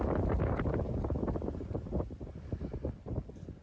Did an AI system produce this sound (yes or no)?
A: no